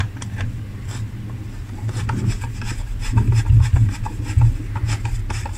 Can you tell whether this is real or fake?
real